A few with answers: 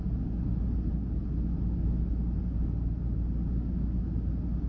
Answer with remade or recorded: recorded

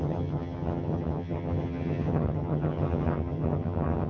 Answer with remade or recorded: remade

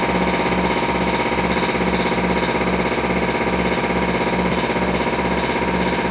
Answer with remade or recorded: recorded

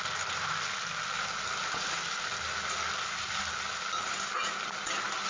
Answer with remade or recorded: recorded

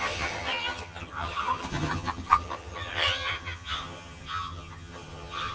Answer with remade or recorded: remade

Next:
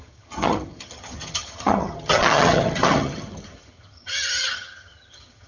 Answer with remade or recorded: remade